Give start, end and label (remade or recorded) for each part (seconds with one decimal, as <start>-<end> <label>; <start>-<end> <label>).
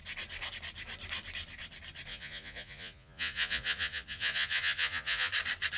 0.0-2.1 recorded; 2.1-5.3 remade; 5.3-5.8 recorded